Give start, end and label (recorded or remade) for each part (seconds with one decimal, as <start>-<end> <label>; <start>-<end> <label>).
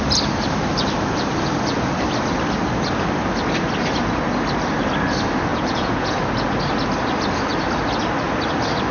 0.0-5.5 recorded; 5.5-6.2 remade; 6.2-8.9 recorded